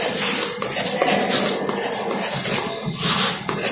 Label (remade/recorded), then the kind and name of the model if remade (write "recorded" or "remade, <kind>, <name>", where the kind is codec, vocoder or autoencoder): recorded